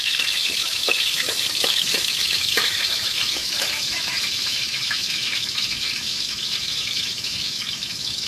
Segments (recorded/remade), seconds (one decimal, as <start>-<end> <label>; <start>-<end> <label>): 0.0-8.3 remade